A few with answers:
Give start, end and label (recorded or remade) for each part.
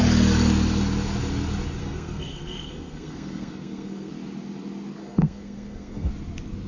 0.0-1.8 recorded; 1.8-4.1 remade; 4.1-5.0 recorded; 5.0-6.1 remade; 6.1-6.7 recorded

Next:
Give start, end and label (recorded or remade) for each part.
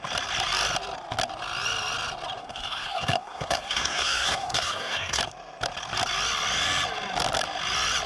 0.0-2.4 recorded; 2.4-5.2 remade; 5.2-8.1 recorded